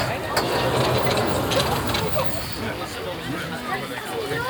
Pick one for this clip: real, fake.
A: real